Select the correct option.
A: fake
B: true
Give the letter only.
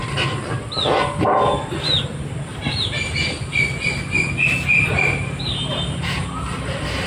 A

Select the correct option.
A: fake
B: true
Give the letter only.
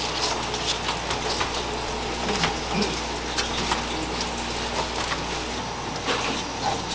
B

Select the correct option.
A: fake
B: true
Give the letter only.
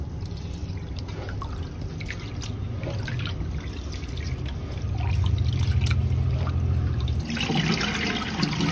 B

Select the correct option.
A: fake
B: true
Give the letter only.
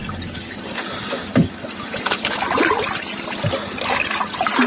B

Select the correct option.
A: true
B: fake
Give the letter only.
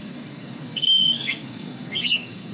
B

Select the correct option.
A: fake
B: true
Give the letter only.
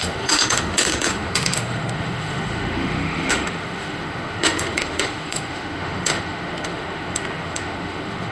A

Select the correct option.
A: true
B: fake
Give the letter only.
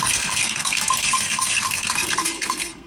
B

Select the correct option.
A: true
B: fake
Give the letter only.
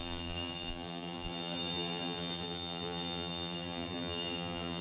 B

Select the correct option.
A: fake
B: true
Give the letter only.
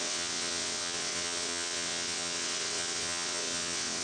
A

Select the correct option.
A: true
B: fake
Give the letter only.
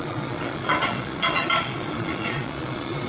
B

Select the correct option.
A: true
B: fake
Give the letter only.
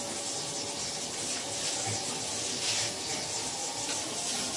A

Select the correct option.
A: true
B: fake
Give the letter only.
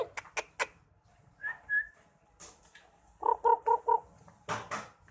A